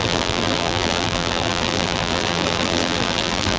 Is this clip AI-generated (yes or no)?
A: yes